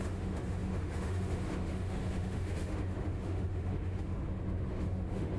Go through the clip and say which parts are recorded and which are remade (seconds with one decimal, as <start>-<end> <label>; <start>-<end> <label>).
0.0-5.4 remade